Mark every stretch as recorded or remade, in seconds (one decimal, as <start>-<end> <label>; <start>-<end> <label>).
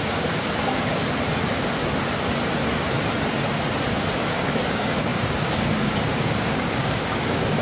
0.0-1.0 remade; 1.0-4.3 recorded; 4.3-7.6 remade